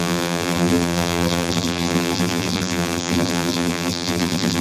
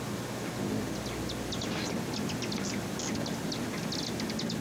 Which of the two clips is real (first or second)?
second